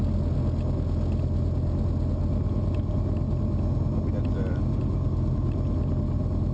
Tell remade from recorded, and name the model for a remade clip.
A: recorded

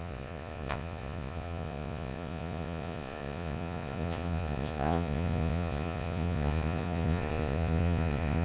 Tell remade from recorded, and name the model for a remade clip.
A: remade, vocoder, Vocos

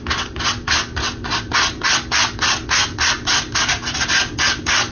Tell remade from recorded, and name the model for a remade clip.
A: recorded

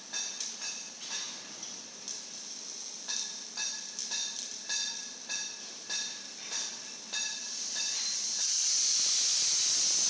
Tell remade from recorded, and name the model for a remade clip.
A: remade, vocoder, BigVGAN v2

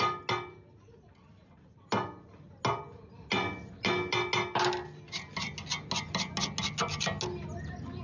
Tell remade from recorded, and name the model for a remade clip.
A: recorded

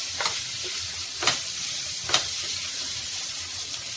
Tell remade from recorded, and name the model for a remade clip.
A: recorded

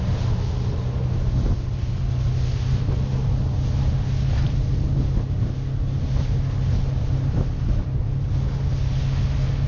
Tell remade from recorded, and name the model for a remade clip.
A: recorded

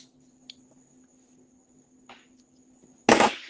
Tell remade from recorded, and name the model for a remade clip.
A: recorded